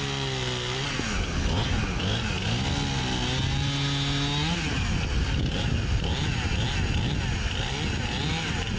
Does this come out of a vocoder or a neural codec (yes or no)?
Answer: no